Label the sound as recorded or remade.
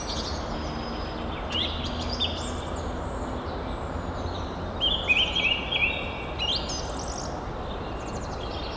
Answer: recorded